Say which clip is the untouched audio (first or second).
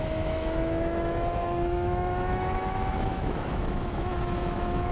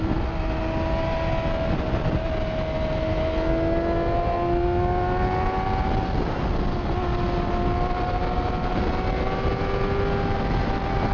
second